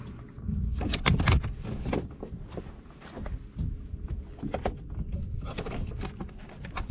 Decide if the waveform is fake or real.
real